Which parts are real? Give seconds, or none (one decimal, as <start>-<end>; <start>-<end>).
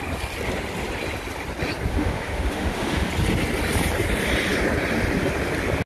0.0-1.9; 3.1-5.9